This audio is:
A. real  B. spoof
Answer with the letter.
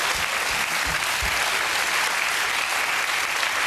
A